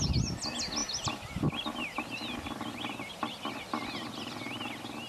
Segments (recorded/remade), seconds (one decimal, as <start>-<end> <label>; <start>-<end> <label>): 0.0-0.8 recorded; 0.8-3.2 remade; 3.2-5.1 recorded